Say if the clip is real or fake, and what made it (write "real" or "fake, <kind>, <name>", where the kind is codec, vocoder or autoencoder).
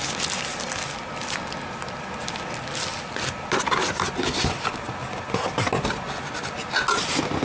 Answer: real